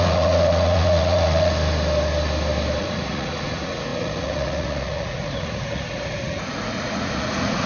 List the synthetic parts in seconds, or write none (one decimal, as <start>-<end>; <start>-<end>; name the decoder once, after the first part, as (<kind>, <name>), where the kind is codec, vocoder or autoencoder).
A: 0.0-1.5 (vocoder, Vocos); 2.8-7.7